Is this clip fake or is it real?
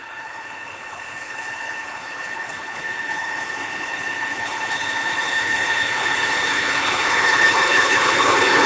fake